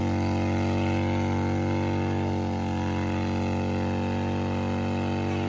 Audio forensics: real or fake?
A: real